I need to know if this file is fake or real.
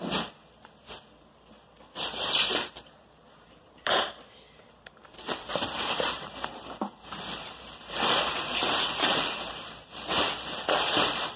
fake